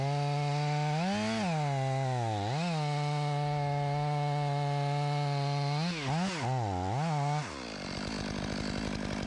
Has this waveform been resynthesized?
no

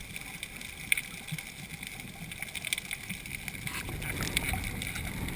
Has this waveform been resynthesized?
no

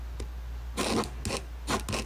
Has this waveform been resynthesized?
no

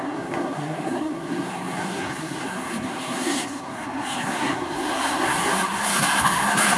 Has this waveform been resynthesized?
yes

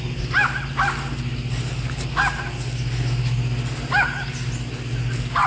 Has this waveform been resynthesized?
no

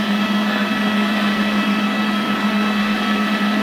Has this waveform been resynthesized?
yes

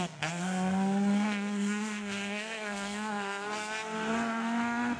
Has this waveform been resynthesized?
yes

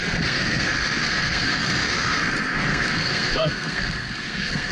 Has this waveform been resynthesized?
yes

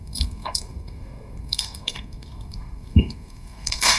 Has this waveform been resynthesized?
yes